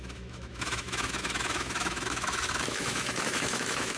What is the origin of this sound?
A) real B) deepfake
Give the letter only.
B